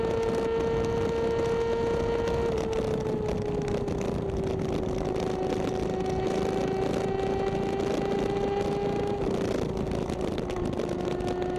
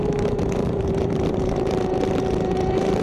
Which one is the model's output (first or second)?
second